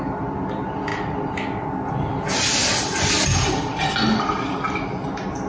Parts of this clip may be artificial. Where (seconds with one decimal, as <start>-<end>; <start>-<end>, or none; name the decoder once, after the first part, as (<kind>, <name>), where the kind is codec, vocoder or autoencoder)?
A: none